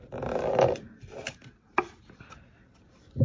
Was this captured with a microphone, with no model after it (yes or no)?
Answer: yes